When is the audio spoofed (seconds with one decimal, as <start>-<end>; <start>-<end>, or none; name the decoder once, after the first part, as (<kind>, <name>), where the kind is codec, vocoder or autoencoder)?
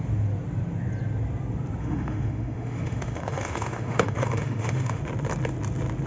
1.8-5.0 (autoencoder, DAC-VAE)